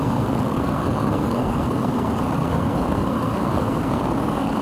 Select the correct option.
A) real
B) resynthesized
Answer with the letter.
B